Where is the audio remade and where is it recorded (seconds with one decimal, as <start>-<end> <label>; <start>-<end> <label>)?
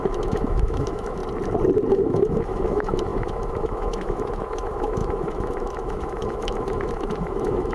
0.0-1.2 remade; 1.2-1.9 recorded; 1.9-7.7 remade